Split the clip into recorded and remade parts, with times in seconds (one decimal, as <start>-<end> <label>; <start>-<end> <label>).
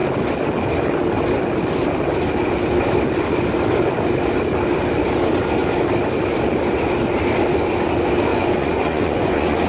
0.0-8.3 recorded; 8.3-9.7 remade